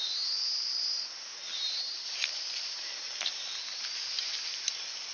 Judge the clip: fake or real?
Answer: real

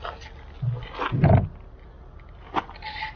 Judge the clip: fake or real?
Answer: real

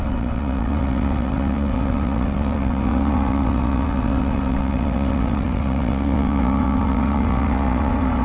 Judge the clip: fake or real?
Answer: fake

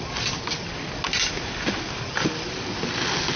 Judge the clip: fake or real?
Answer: real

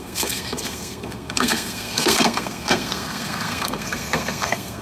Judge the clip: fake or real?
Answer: fake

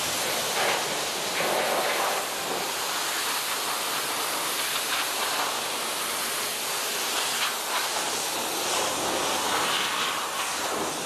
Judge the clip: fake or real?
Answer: real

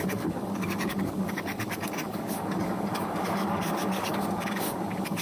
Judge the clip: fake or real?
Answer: fake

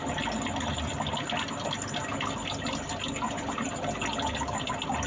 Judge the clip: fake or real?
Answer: real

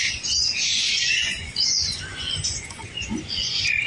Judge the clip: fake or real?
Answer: fake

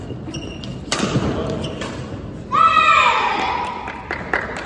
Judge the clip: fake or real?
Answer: real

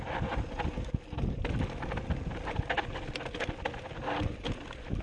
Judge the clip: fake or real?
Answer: real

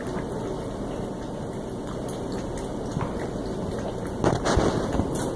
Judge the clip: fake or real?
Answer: real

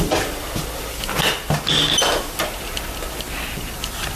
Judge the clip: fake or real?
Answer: real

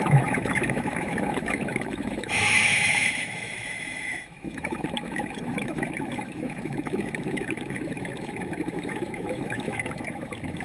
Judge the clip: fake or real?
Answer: fake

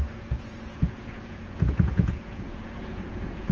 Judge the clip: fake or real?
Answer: fake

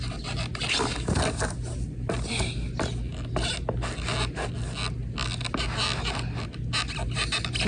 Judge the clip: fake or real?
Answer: real